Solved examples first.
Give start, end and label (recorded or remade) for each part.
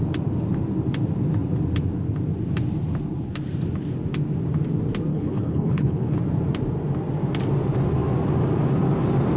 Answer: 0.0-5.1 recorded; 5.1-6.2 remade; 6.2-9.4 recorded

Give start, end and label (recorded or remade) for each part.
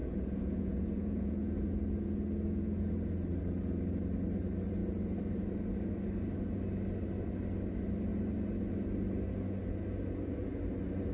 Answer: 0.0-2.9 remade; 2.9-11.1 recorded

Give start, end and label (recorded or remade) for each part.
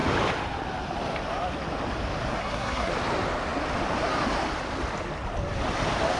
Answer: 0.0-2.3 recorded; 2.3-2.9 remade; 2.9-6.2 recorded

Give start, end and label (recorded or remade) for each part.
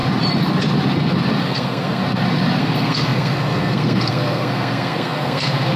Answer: 0.0-1.4 recorded; 1.4-2.0 remade; 2.0-2.6 recorded; 2.6-5.8 remade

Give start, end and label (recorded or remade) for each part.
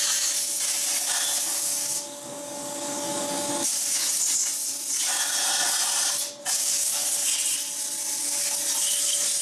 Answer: 0.0-1.5 recorded; 1.5-3.5 remade; 3.5-6.6 recorded; 6.6-7.1 remade; 7.1-9.4 recorded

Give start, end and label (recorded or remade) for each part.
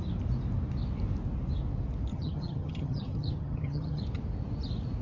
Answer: 0.0-2.1 recorded; 2.1-4.0 remade; 4.0-5.0 recorded